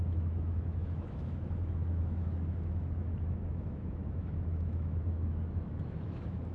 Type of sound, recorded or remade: remade